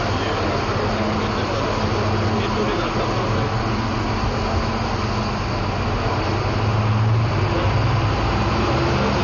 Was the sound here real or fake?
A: real